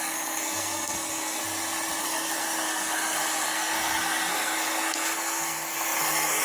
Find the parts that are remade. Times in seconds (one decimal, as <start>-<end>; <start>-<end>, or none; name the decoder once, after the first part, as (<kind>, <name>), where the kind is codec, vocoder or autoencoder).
0.0-1.4 (codec, SNAC); 2.0-6.4